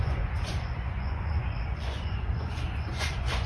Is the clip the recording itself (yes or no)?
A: no